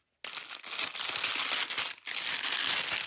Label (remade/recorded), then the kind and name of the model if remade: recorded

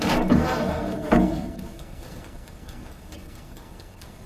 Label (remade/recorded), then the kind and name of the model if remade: remade, codec, SNAC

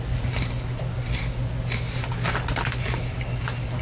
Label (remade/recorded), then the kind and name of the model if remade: recorded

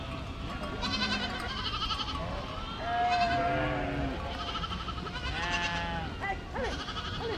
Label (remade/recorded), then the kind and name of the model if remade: recorded